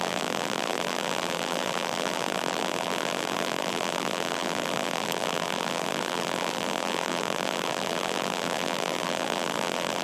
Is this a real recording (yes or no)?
no